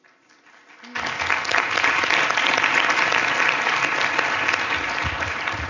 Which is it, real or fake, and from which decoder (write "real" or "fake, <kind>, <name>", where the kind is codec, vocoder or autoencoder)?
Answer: real